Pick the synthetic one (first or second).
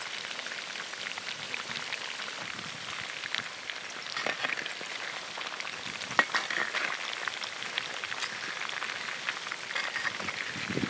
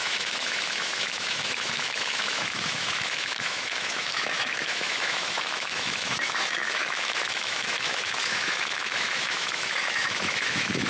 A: second